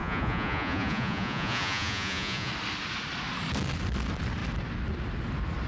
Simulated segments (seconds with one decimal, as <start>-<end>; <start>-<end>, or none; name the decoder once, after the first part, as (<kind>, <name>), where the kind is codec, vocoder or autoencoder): 0.0-2.5 (vocoder, Vocos)